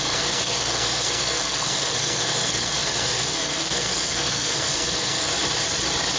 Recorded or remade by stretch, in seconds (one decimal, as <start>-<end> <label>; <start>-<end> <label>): 0.0-5.3 remade; 5.3-6.2 recorded